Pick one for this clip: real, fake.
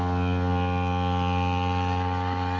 real